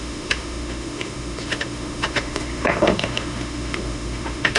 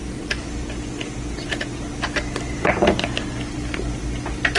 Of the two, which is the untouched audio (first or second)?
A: second